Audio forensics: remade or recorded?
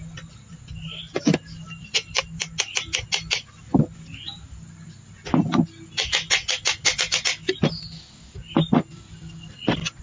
recorded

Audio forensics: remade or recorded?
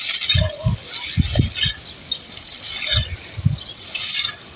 recorded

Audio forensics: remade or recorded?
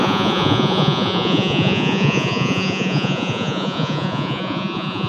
remade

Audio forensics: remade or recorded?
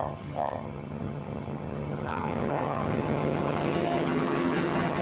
remade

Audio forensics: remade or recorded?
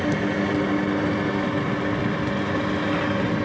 recorded